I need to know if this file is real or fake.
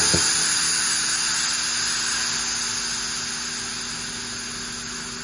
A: real